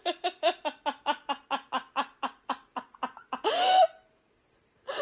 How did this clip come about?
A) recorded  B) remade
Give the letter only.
A